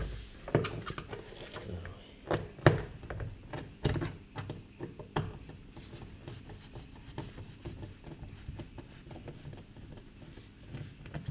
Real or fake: real